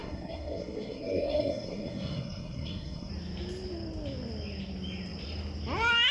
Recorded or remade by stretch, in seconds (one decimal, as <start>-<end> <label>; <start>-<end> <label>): 0.0-3.1 remade; 3.1-6.1 recorded